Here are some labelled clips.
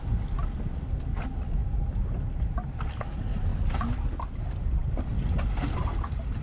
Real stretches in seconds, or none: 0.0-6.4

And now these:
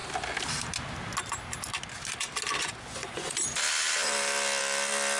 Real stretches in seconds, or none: 0.0-2.6; 3.4-5.2

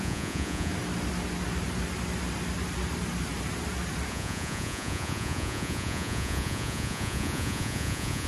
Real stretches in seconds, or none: 0.7-4.1

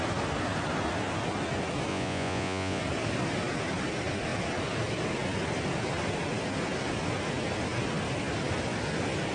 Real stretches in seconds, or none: 0.0-1.9; 2.8-9.3

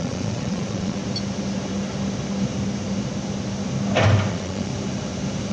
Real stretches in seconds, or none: 1.0-4.3; 4.7-5.5

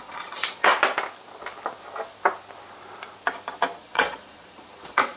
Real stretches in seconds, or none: 0.7-3.8